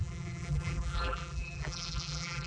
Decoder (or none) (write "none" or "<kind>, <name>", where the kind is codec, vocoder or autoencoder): vocoder, BigVGAN v2